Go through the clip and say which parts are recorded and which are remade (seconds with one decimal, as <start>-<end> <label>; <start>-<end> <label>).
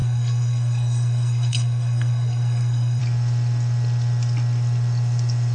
0.0-3.0 remade; 3.0-5.5 recorded